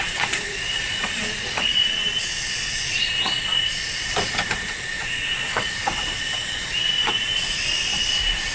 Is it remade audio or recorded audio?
remade